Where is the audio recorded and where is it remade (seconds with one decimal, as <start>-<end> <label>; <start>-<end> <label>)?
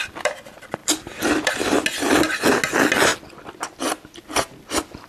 0.0-0.8 recorded; 0.8-1.5 remade; 1.5-5.1 recorded